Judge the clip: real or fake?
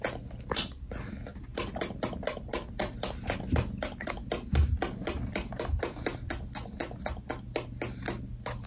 real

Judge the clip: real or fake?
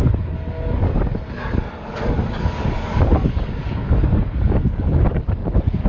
fake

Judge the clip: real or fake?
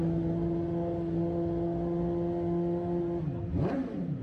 real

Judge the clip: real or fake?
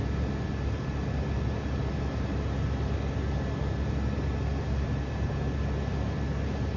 real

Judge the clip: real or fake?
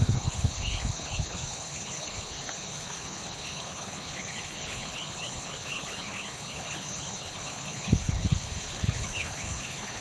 fake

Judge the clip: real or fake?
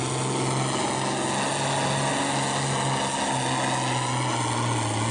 real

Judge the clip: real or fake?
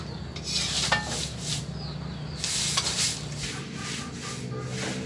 real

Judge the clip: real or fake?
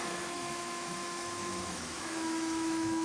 fake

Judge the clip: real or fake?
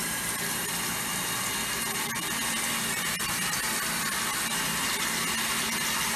real